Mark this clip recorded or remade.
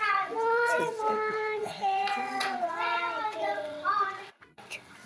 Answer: remade